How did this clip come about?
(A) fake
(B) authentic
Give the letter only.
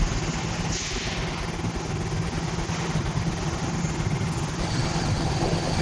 B